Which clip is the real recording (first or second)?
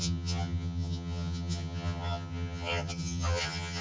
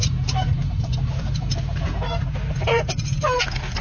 second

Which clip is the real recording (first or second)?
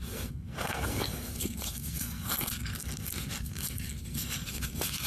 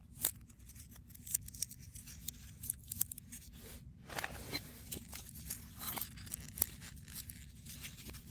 second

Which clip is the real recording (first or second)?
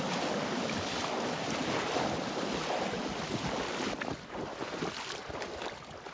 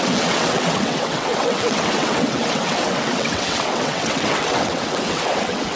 first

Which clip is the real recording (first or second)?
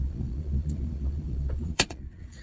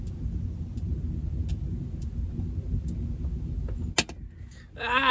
second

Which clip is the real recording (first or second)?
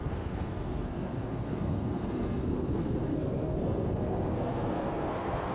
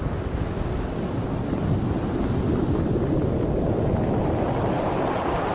second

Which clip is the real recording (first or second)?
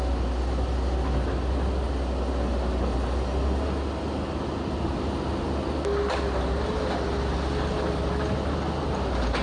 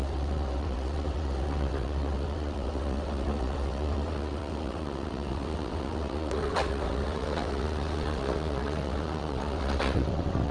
first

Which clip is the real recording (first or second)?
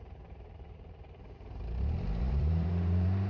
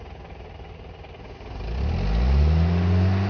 second